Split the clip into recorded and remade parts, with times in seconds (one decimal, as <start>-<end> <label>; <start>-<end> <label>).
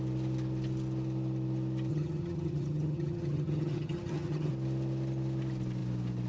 0.0-1.9 recorded; 1.9-4.5 remade; 4.5-6.3 recorded